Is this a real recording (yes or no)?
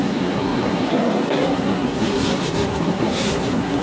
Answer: no